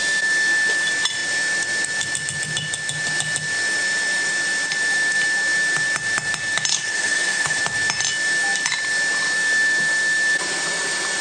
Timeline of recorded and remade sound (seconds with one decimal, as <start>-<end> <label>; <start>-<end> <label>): 0.0-6.7 recorded; 6.7-7.6 remade; 7.6-11.2 recorded